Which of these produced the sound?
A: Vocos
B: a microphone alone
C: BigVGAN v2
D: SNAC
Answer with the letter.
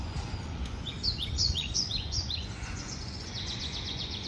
A